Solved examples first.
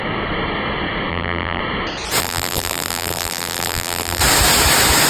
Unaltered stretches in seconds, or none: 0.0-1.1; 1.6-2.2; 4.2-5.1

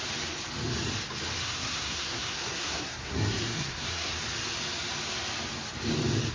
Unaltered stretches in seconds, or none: 0.0-1.4; 4.1-6.3